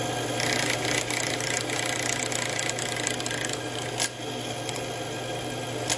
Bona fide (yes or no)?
yes